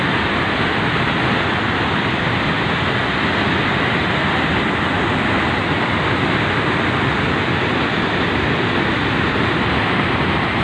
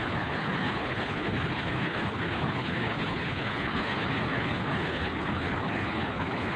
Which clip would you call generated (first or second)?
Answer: second